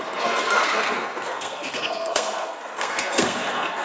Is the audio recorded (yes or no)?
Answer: no